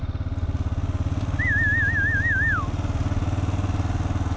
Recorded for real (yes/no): yes